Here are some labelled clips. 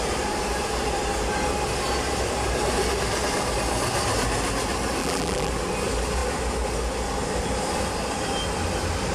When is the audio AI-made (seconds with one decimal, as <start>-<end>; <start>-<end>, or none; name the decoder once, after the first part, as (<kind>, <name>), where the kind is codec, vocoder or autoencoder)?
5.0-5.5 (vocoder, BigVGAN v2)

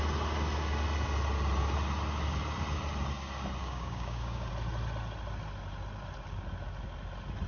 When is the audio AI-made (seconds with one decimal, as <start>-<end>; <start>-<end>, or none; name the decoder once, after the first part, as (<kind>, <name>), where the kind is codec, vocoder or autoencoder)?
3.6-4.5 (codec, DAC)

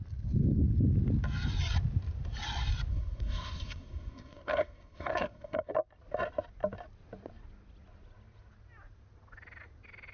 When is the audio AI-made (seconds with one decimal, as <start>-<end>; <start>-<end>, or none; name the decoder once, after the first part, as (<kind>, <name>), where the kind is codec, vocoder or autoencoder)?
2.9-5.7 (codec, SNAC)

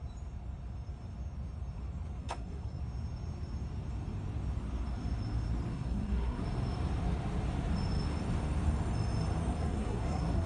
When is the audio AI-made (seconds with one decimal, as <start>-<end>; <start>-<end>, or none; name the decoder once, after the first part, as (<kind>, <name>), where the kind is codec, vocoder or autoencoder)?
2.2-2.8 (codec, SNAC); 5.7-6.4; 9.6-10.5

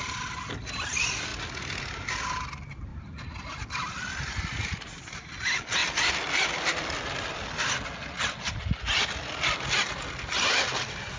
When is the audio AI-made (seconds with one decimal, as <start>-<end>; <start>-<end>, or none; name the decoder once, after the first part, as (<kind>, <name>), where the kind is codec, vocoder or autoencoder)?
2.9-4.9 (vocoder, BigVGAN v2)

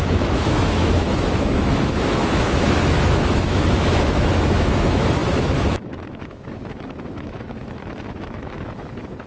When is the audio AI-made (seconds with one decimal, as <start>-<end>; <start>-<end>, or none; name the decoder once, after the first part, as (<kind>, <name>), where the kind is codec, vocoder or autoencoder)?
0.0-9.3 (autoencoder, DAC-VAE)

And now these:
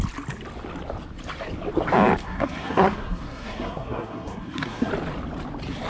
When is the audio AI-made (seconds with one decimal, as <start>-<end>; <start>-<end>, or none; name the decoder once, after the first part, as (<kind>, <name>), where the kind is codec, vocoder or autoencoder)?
2.2-4.9 (codec, SNAC)

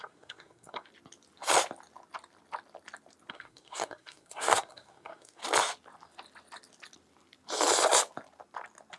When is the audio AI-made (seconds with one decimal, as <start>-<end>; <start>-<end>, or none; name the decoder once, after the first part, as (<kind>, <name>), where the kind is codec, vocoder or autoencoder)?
0.0-0.9 (codec, SNAC); 3.3-5.4